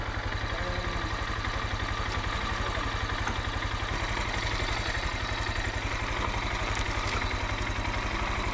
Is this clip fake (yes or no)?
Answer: no